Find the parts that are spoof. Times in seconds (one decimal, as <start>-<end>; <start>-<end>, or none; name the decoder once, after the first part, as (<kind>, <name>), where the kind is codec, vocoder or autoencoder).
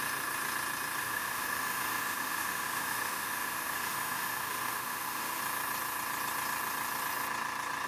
1.0-5.4 (autoencoder, DAC-VAE)